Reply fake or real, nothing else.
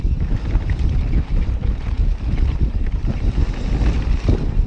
real